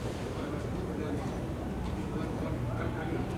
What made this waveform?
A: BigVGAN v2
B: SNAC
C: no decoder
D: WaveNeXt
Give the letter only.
A